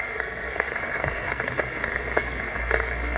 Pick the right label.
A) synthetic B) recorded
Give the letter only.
A